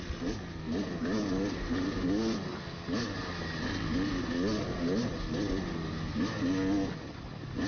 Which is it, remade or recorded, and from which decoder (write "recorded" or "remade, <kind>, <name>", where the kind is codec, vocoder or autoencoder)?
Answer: recorded